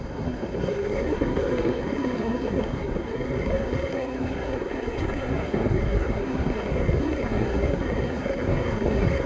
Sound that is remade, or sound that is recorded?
remade